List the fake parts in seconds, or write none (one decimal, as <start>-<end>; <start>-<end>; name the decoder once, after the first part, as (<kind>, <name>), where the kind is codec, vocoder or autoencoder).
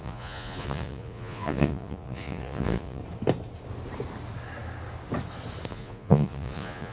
0.0-3.0 (vocoder, Vocos); 5.7-6.9